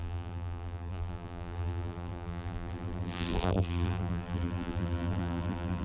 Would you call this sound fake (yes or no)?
yes